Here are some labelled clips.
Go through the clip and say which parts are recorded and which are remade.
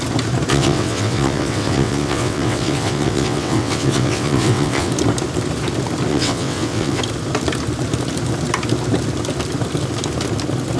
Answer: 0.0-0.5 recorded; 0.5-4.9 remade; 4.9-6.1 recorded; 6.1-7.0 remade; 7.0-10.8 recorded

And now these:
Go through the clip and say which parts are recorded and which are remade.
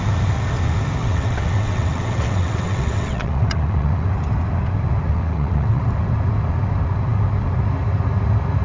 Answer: 0.0-1.0 recorded; 1.0-4.1 remade; 4.1-5.1 recorded; 5.1-5.8 remade; 5.8-8.6 recorded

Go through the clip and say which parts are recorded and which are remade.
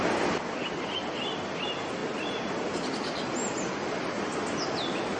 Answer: 0.0-5.2 recorded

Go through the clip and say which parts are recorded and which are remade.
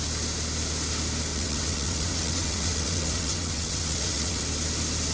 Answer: 0.0-1.3 recorded; 1.3-4.4 remade; 4.4-5.1 recorded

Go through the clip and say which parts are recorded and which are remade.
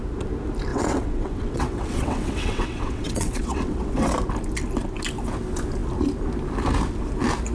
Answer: 0.0-0.7 recorded; 0.7-4.1 remade; 4.1-7.5 recorded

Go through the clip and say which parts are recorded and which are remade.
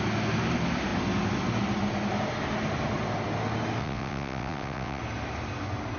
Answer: 0.0-3.8 recorded; 3.8-5.0 remade; 5.0-6.0 recorded